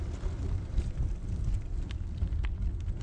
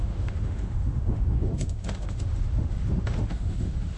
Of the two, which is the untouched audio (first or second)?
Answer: first